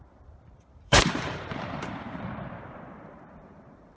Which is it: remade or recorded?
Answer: remade